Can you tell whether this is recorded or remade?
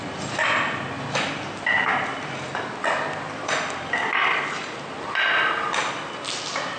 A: recorded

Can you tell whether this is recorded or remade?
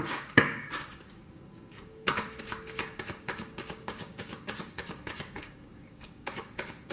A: remade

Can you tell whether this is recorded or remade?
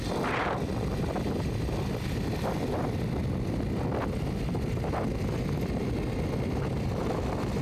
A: recorded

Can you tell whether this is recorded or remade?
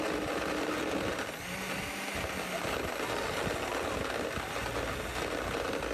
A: recorded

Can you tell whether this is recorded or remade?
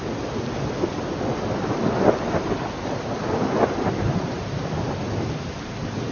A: recorded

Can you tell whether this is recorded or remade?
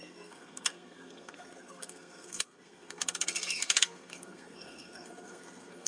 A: remade